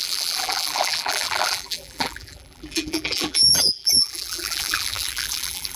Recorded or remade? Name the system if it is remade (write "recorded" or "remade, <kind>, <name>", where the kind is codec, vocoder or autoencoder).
remade, vocoder, BigVGAN v2